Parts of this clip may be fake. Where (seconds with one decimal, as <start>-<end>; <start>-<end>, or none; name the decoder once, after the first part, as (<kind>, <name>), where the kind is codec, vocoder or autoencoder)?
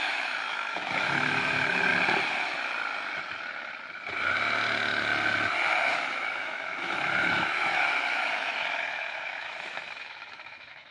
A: 0.0-1.9 (autoencoder, DAC-VAE); 5.7-10.9